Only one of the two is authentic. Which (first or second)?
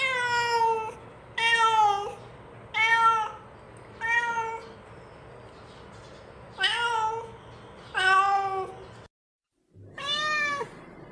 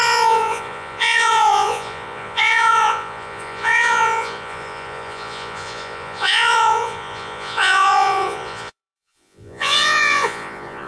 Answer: first